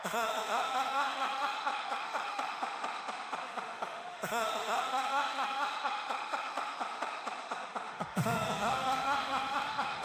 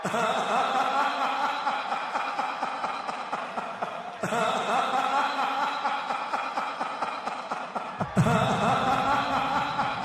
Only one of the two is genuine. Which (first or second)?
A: second